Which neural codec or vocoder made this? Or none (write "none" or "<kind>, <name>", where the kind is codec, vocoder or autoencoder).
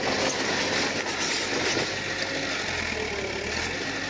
none